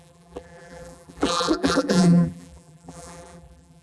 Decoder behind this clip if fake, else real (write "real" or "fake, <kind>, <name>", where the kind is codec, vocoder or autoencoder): fake, vocoder, BigVGAN v2